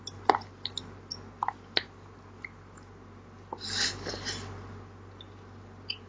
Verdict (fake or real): real